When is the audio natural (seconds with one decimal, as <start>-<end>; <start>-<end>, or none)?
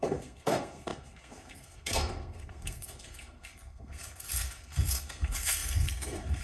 none